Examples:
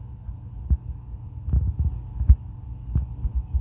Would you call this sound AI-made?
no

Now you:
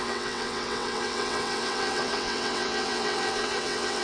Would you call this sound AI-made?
yes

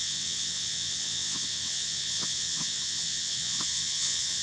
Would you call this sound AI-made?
yes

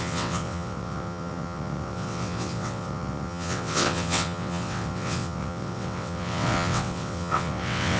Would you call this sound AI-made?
yes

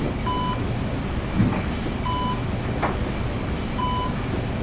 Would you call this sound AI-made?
no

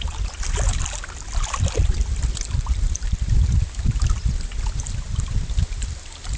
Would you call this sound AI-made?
no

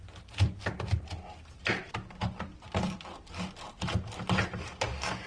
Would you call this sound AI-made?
no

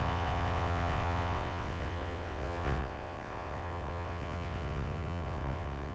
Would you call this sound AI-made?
yes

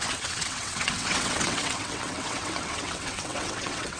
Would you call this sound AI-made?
yes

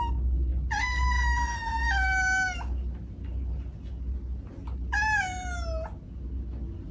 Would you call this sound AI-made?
no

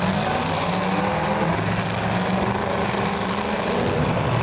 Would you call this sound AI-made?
no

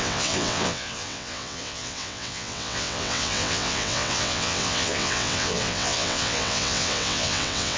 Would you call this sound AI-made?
yes